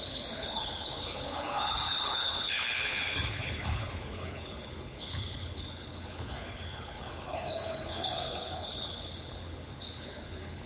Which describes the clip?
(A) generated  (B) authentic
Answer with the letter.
A